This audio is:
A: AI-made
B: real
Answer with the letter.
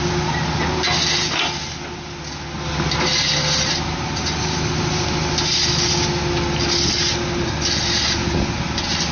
B